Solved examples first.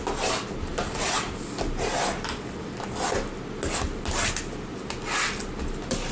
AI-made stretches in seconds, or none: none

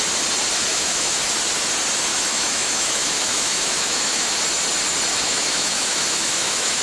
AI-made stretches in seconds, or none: 0.7-1.3 (autoencoder, DAC-VAE); 2.1-4.3; 5.1-6.8

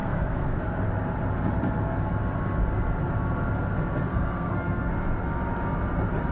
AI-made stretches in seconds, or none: 0.0-0.6 (codec, SNAC); 4.1-4.9

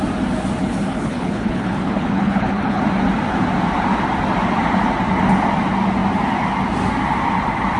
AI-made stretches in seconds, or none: 0.6-2.8 (codec, HILCodec)

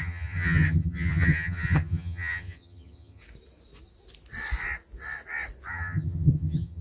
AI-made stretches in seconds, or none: 0.0-3.2 (vocoder, HiFi-GAN); 5.7-6.8

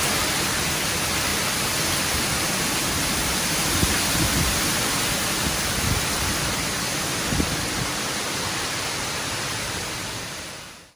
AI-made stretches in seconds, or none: 0.0-1.3 (vocoder, BigVGAN v2); 1.9-11.0

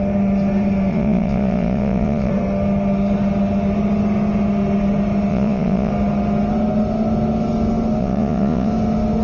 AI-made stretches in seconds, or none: 0.9-2.3 (vocoder, Vocos); 5.3-5.9; 8.0-8.7

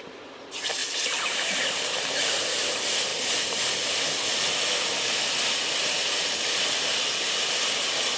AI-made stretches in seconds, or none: 0.8-1.6 (vocoder, BigVGAN v2)